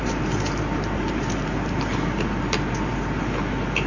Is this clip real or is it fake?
fake